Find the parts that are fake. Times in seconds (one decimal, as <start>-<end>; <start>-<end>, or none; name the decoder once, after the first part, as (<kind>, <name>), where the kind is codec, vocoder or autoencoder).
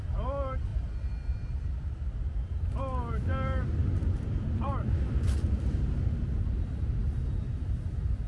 0.7-2.8 (vocoder, BigVGAN v2); 3.8-5.3